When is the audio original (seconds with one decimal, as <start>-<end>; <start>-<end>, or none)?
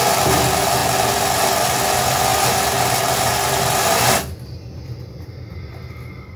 0.0-6.4